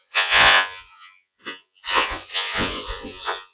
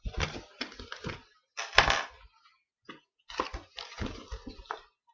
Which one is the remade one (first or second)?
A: first